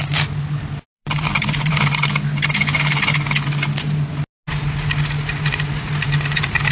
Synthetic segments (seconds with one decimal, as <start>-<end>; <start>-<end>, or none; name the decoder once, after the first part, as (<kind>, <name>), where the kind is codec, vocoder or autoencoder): 0.9-1.8 (vocoder, BigVGAN v2)